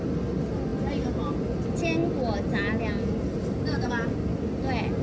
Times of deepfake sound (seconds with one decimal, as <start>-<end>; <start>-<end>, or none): none